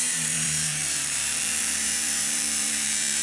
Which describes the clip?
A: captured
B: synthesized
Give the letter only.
B